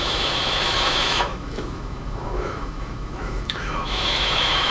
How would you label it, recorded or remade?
remade